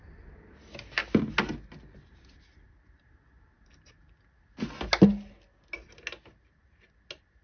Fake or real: real